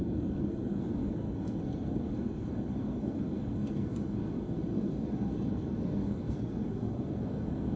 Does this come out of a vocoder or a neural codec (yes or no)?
yes